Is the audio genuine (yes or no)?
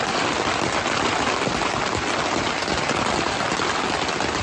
yes